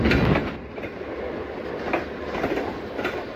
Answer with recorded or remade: recorded